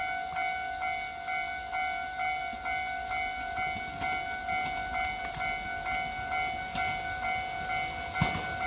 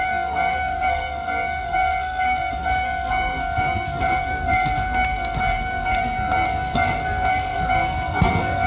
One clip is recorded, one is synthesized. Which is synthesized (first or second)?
second